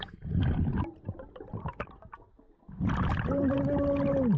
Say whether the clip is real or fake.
real